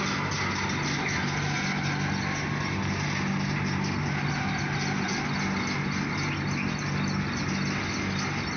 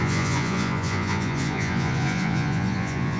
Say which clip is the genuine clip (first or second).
first